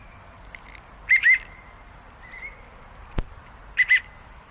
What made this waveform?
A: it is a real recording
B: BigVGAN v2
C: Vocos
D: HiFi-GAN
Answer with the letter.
A